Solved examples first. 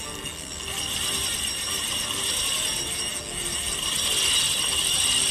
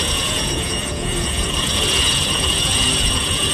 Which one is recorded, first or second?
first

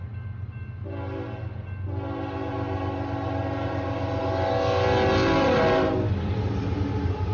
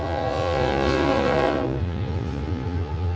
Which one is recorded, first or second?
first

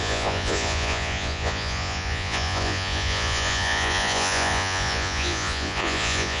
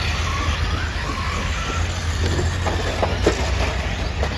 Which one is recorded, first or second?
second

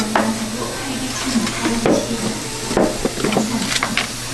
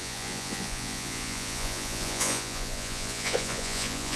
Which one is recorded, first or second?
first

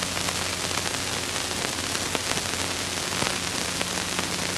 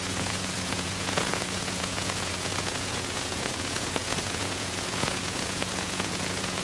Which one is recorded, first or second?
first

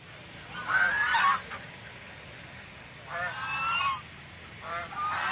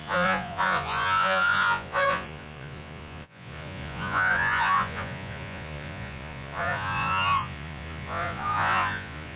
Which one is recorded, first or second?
first